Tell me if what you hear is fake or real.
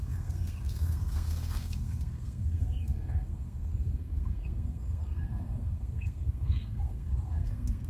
fake